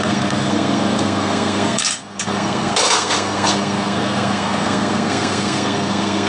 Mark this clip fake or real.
fake